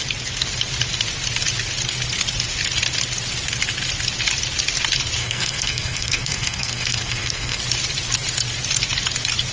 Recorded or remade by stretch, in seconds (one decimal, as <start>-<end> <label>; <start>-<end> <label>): 0.0-5.2 recorded; 5.2-7.6 remade; 7.6-9.5 recorded